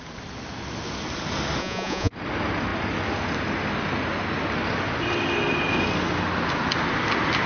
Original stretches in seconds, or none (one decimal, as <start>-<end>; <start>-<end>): 0.0-1.6; 2.1-7.5